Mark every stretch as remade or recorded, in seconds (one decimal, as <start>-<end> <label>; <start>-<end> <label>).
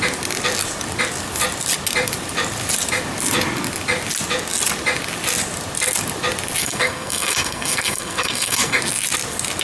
0.0-6.6 recorded; 6.6-8.8 remade; 8.8-9.6 recorded